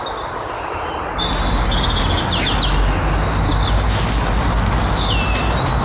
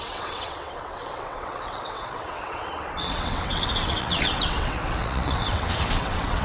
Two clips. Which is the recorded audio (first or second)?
first